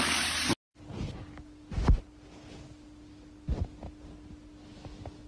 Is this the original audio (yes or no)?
yes